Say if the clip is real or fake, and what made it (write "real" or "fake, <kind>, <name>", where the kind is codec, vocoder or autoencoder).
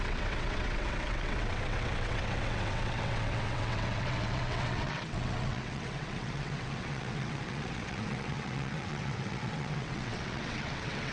fake, vocoder, WaveNeXt